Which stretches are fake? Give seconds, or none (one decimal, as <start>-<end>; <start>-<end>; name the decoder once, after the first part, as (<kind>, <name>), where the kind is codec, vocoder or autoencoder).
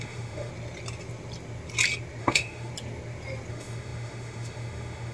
0.0-0.5 (autoencoder, DAC-VAE); 2.2-2.7; 3.5-5.1